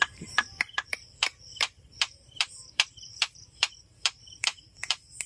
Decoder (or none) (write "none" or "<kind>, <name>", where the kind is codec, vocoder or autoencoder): vocoder, BigVGAN v2